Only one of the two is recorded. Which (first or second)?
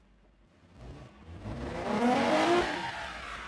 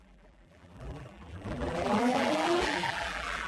first